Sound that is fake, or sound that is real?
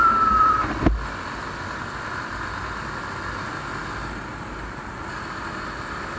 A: real